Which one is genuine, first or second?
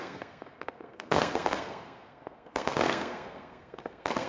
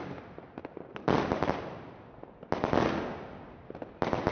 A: second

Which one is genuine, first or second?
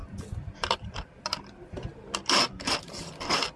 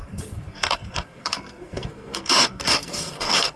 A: first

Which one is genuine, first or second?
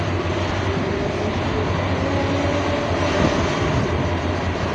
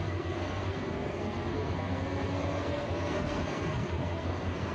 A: first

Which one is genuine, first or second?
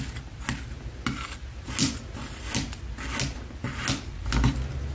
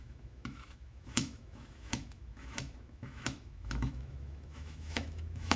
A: first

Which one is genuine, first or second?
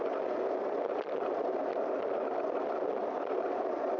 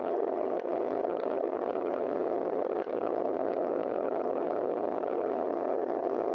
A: first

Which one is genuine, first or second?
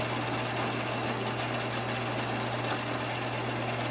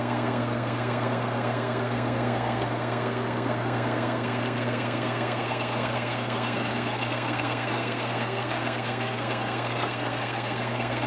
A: first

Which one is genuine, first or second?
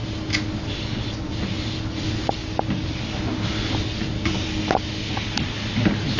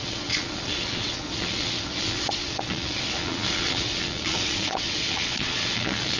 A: first